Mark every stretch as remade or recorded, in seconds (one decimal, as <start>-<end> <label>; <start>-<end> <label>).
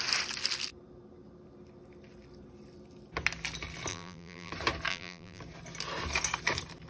0.0-3.9 recorded; 3.9-4.5 remade; 4.5-4.9 recorded; 4.9-5.4 remade; 5.4-6.9 recorded